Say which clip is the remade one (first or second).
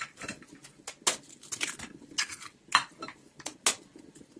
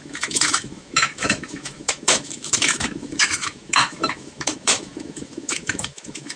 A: second